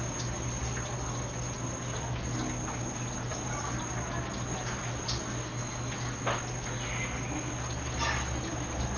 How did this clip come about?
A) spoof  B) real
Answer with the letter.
B